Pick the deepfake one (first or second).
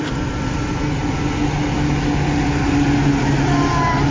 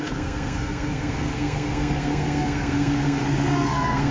second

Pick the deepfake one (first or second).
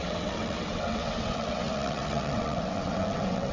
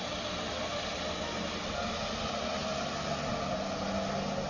first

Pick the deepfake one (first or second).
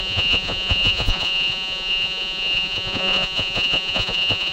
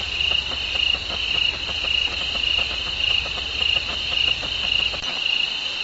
first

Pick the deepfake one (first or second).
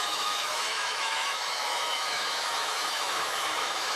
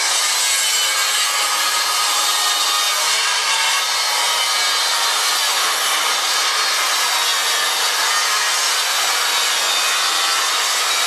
first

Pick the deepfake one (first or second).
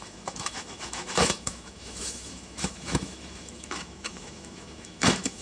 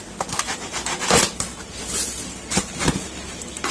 first